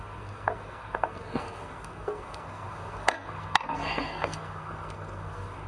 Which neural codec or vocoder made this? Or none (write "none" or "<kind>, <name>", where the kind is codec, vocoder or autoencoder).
codec, SNAC